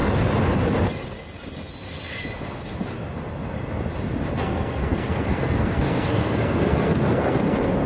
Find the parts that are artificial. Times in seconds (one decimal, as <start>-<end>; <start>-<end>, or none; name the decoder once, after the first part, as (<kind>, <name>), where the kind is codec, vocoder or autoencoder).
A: 4.3-7.9 (codec, SNAC)